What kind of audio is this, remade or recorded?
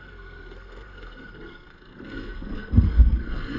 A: remade